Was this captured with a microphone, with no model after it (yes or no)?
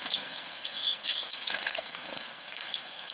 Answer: no